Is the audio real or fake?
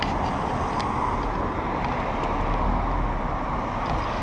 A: real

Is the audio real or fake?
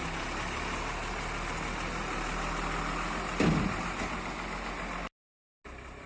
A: real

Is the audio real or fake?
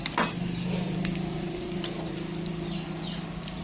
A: real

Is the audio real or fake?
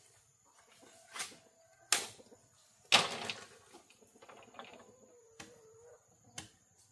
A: real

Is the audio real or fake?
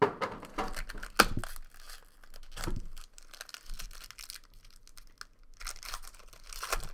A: real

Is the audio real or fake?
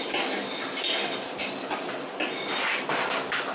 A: real